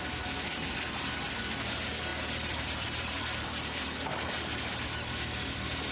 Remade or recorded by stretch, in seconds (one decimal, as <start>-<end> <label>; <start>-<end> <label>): 0.0-2.1 recorded; 2.1-5.1 remade; 5.1-5.9 recorded